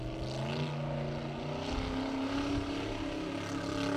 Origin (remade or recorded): recorded